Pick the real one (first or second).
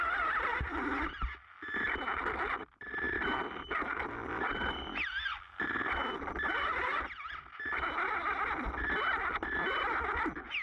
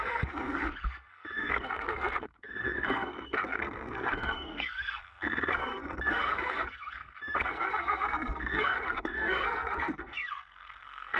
first